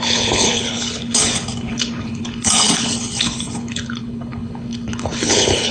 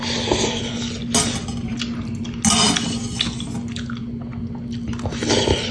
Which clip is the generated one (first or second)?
first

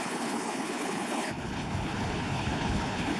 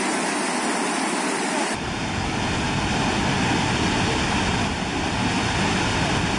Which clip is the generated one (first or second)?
first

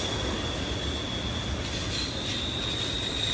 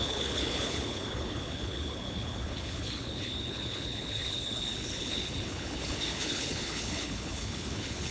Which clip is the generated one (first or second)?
second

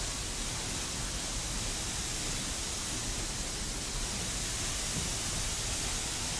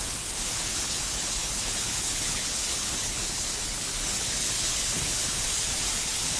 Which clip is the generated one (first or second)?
second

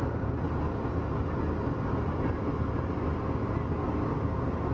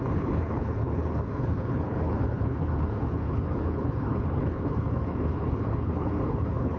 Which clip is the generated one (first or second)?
second